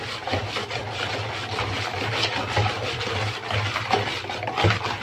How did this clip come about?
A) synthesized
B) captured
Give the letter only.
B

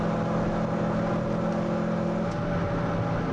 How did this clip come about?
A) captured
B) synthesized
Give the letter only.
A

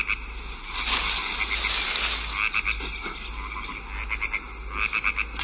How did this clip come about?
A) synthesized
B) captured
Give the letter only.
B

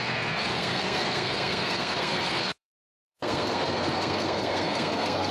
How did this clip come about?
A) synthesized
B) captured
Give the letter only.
A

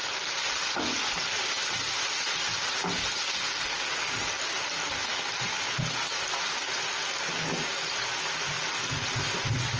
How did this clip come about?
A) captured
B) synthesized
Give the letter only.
A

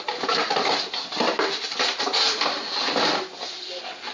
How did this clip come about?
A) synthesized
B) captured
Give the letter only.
B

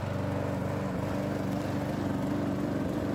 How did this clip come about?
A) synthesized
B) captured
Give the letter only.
B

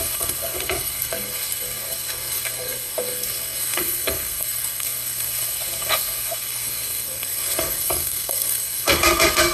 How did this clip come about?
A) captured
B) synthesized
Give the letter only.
B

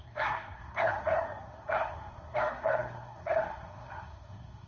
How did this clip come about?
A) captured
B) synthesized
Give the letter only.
B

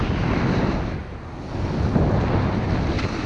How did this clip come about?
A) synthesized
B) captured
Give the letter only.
B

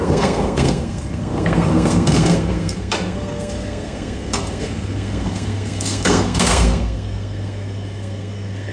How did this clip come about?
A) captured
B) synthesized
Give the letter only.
B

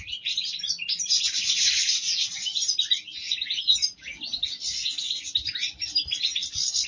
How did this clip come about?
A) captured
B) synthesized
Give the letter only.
A